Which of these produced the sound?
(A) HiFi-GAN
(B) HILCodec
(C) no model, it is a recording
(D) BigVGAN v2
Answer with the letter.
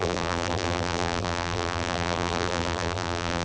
D